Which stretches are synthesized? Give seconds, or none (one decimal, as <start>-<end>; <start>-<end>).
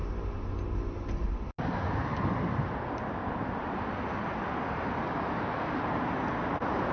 none